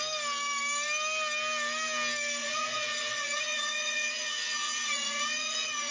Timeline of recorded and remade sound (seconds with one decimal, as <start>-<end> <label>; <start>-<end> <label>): 0.0-2.4 recorded; 2.4-5.9 remade